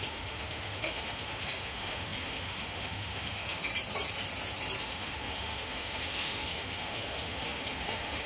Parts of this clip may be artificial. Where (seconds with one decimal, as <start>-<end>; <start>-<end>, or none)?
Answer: 0.0-3.7; 4.8-8.3